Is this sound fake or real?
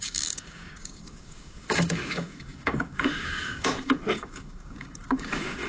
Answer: fake